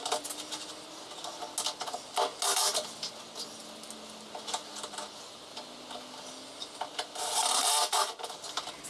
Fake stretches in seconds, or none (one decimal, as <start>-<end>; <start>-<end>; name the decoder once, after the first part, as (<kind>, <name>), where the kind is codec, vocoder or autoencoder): none